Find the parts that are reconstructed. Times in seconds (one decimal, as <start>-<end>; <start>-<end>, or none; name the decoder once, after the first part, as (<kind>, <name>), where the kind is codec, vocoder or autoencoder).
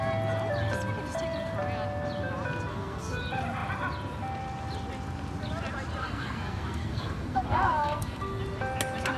2.7-3.2 (codec, SNAC); 6.0-8.4